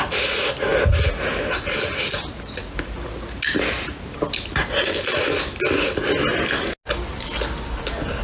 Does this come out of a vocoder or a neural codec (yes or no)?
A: no